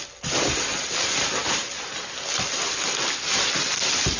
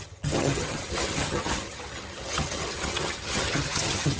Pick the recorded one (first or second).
first